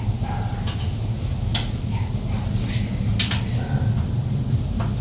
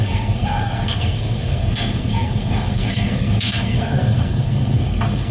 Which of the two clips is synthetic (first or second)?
second